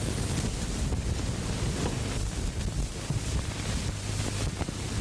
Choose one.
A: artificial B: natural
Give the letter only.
B